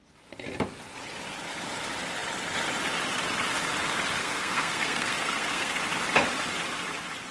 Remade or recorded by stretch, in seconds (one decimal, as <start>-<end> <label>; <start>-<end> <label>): 0.0-4.2 recorded; 4.2-5.8 remade; 5.8-7.3 recorded